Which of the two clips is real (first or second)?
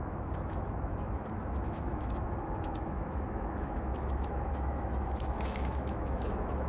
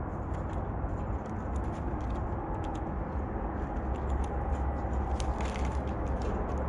second